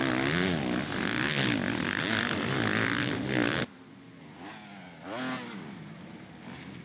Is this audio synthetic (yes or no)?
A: no